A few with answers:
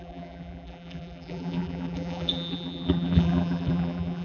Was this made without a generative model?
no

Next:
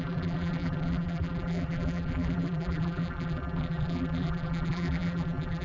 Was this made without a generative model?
no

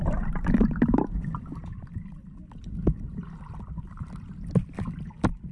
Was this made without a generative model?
no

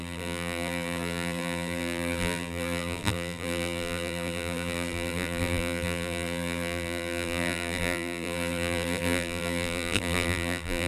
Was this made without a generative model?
no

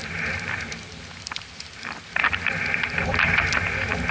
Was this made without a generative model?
no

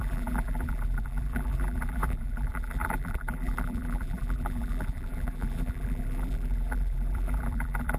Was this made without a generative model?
no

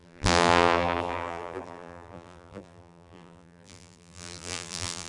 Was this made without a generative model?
no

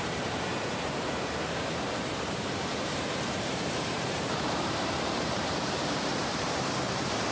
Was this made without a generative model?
no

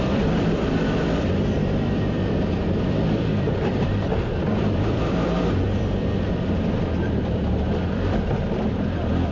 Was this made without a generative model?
no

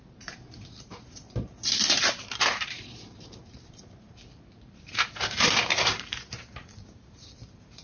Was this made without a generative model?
no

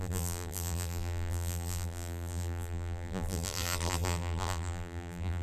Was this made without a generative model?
no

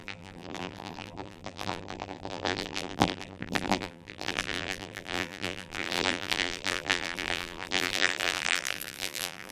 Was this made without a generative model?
no